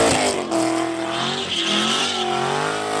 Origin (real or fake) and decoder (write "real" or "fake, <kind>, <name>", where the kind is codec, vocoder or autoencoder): real